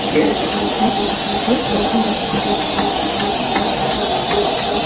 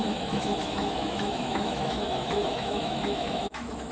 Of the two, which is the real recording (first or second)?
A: first